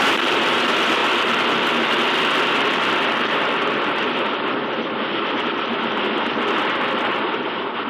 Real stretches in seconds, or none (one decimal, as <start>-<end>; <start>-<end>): none